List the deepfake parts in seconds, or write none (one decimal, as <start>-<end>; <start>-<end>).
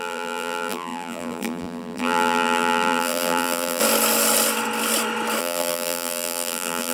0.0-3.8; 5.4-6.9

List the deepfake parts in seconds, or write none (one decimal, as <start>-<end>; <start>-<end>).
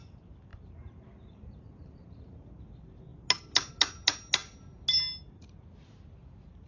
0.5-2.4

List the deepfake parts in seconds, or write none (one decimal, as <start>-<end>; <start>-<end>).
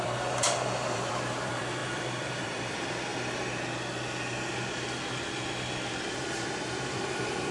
0.0-3.1; 6.1-7.5